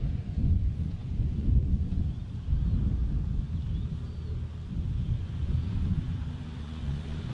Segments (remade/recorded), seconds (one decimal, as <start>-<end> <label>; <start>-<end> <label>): 0.0-2.0 remade; 2.0-5.2 recorded; 5.2-7.3 remade